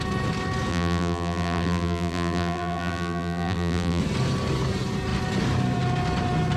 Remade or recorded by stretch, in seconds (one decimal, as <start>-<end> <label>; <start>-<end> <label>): 0.0-0.7 recorded; 0.7-4.0 remade; 4.0-6.6 recorded